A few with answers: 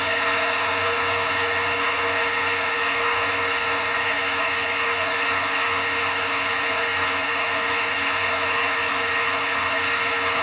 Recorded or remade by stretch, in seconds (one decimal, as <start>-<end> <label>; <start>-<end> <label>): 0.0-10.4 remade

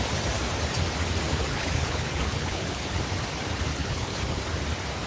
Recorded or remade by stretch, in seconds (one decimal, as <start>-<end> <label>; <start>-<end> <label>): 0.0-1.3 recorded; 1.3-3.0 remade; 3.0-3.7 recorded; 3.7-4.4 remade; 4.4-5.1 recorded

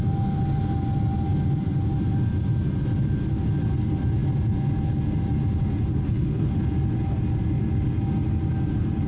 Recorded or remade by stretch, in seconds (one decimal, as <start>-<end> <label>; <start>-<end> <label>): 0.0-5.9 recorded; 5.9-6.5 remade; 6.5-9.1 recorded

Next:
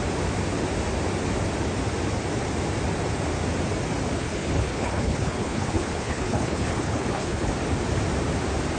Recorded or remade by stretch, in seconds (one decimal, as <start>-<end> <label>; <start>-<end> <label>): 0.0-4.2 recorded; 4.2-7.5 remade; 7.5-8.8 recorded

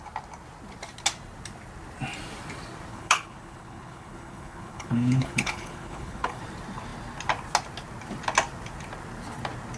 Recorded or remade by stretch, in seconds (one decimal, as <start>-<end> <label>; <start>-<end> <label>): 0.0-2.9 recorded; 2.9-6.4 remade; 6.4-9.8 recorded